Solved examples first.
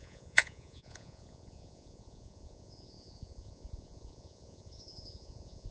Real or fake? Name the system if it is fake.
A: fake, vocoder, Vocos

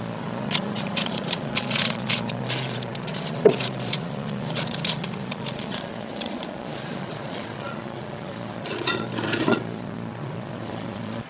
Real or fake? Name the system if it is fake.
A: fake, vocoder, Vocos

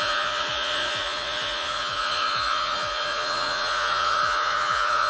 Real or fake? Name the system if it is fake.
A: fake, vocoder, Vocos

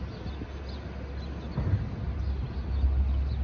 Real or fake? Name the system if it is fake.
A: real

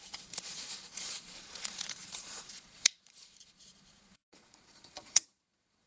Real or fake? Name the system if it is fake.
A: fake, vocoder, Vocos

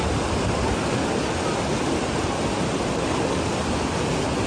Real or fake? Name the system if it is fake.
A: real